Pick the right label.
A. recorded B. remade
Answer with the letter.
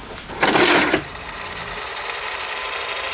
A